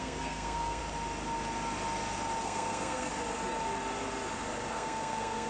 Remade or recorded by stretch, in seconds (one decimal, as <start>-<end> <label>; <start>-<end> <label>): 0.0-0.8 remade; 0.8-2.4 recorded; 2.4-3.1 remade; 3.1-4.7 recorded; 4.7-5.5 remade